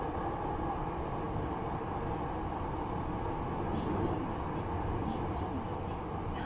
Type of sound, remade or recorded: recorded